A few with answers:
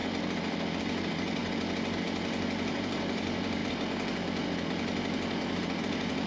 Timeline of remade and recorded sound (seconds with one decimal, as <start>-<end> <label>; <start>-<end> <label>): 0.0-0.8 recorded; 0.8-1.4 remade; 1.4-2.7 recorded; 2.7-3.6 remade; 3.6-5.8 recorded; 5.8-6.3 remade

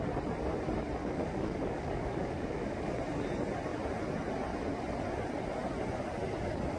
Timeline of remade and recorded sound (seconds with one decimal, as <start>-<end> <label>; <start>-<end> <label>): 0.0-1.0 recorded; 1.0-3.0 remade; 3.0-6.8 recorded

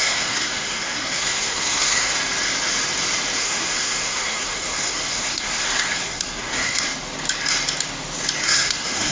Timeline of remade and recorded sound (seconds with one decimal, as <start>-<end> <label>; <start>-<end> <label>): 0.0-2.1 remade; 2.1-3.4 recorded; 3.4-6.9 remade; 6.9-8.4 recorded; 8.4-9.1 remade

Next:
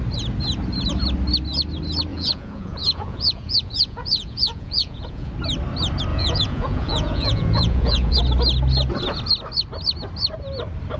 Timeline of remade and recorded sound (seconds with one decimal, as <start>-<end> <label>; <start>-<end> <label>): 0.0-2.1 recorded; 2.1-5.3 remade; 5.3-6.1 recorded; 6.1-8.2 remade; 8.2-11.0 recorded

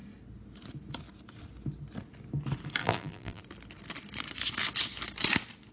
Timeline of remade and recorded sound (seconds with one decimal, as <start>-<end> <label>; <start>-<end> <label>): 0.0-2.8 recorded; 2.8-3.4 remade; 3.4-5.7 recorded

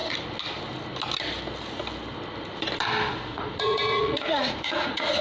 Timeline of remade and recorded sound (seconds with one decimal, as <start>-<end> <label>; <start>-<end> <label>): 0.0-3.1 recorded; 3.1-5.2 remade

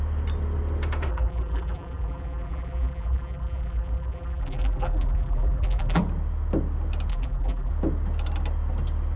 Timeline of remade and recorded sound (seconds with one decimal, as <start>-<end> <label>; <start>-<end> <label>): 0.0-1.1 recorded; 1.1-6.0 remade; 6.0-7.1 recorded; 7.1-7.7 remade; 7.7-9.2 recorded

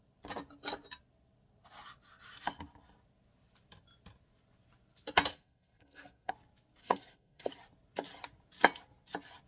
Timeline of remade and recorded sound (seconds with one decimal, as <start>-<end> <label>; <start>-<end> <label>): 0.0-5.3 recorded; 5.3-6.3 remade; 6.3-6.8 recorded; 6.8-7.5 remade; 7.5-9.5 recorded